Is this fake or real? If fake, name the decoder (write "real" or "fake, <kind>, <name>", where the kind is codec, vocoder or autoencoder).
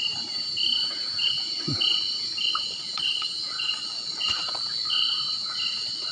real